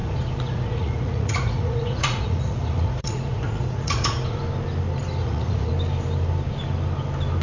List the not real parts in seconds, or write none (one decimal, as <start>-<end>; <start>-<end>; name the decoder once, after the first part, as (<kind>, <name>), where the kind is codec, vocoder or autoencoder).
0.0-4.4 (vocoder, Vocos); 5.2-5.7